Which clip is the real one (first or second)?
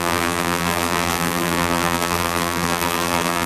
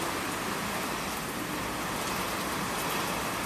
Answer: second